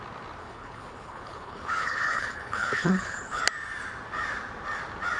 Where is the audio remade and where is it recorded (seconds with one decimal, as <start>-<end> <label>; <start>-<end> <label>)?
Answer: 0.0-0.4 recorded; 0.4-3.4 remade; 3.4-5.2 recorded